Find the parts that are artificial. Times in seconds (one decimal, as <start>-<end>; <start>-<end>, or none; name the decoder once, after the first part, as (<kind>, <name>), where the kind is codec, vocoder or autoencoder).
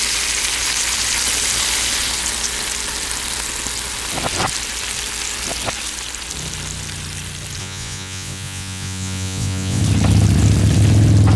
7.6-9.8 (vocoder, Vocos)